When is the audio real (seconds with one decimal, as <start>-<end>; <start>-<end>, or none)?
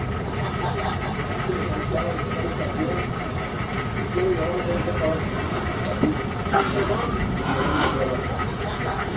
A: 0.0-7.7